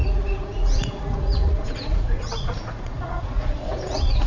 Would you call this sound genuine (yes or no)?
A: no